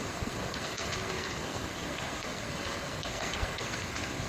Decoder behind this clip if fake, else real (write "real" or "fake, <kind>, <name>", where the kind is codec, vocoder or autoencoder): fake, codec, SNAC